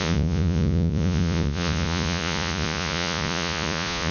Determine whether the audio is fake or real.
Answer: fake